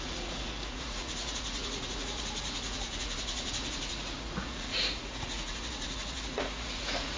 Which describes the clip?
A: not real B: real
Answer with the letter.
A